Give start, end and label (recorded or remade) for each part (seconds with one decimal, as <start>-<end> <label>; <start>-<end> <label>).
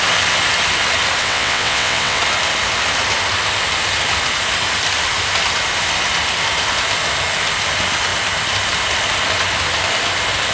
0.0-1.2 recorded; 1.2-2.2 remade; 2.2-10.5 recorded